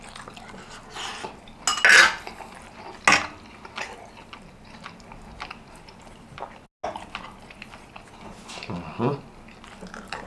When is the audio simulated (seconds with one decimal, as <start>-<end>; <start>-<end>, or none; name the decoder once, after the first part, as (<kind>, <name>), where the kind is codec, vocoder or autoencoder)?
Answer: none